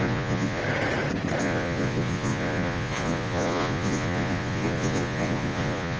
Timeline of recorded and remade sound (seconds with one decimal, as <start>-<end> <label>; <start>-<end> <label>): 0.0-0.6 remade; 0.6-1.4 recorded; 1.4-6.0 remade